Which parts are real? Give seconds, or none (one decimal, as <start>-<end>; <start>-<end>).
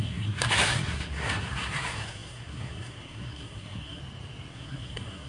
4.0-4.5